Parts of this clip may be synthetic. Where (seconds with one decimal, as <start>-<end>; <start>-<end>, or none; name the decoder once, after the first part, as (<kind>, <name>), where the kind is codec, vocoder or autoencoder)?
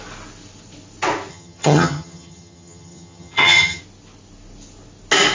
1.3-3.8 (vocoder, HiFi-GAN)